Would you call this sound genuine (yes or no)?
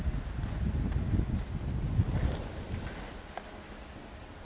yes